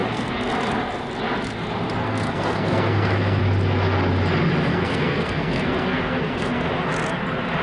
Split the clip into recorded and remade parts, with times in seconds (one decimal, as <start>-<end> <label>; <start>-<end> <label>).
0.0-0.5 remade; 0.5-2.0 recorded; 2.0-3.4 remade; 3.4-4.7 recorded; 4.7-6.7 remade; 6.7-7.6 recorded